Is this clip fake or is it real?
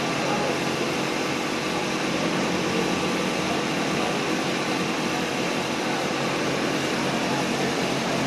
real